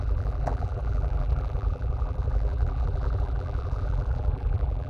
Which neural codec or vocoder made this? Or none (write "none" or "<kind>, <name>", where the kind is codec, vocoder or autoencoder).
vocoder, BigVGAN v2